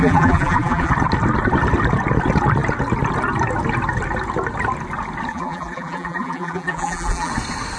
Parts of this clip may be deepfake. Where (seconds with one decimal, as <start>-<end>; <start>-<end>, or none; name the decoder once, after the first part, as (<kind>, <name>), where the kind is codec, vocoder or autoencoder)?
0.0-0.9 (vocoder, BigVGAN v2); 5.3-7.3